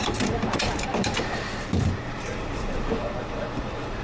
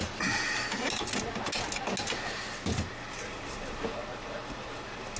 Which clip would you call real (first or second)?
second